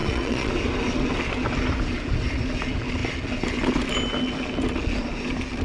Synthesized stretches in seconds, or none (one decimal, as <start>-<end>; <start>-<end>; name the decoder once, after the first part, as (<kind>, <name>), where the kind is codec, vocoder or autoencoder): 0.0-0.5 (vocoder, Vocos)